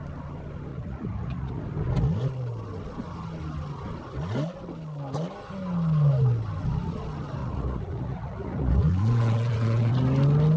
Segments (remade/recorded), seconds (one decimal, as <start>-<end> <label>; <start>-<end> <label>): 0.0-0.7 recorded; 0.7-1.6 remade; 1.6-7.4 recorded; 7.4-9.9 remade; 9.9-10.6 recorded